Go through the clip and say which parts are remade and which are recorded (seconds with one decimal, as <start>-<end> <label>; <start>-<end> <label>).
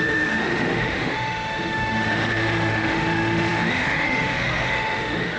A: 0.0-5.4 remade